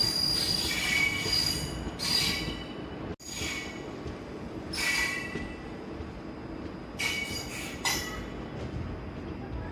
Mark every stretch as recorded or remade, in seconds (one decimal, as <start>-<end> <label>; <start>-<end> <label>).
0.0-9.7 recorded